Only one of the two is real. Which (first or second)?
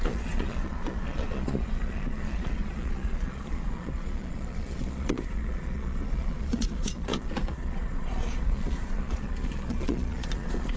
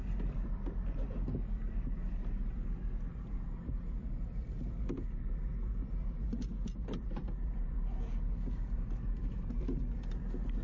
second